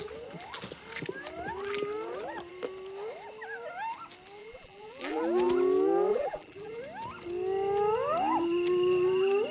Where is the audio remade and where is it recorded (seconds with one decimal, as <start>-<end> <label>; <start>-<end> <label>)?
0.0-4.4 recorded; 4.4-5.2 remade; 5.2-6.1 recorded; 6.1-6.8 remade; 6.8-9.5 recorded